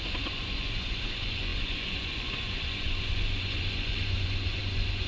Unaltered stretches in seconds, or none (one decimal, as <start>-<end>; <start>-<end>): none